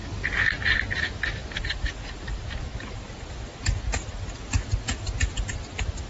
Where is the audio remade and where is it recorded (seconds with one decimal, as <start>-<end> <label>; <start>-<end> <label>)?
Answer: 0.0-1.4 recorded; 1.4-2.2 remade; 2.2-2.7 recorded; 2.7-3.3 remade; 3.3-6.1 recorded